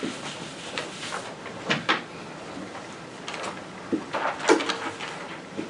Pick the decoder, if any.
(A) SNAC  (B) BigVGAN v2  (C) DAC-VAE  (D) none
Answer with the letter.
D